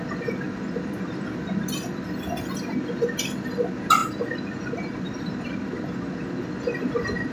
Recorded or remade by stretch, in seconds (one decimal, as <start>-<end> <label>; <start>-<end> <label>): 0.0-7.3 recorded